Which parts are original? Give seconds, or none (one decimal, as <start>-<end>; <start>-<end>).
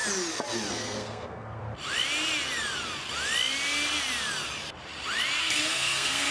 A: 0.0-0.7; 1.6-5.4